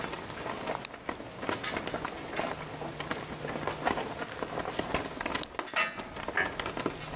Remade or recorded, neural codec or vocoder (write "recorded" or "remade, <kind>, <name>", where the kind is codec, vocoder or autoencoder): recorded